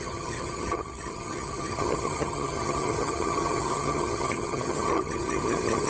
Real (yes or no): no